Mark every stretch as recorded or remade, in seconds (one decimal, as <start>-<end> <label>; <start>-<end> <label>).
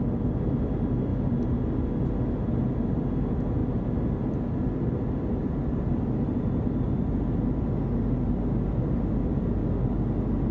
0.0-10.5 recorded